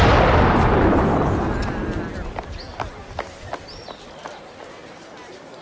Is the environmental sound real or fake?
real